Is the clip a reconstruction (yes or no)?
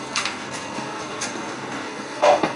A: yes